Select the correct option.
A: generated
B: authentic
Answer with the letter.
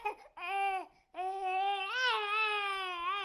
B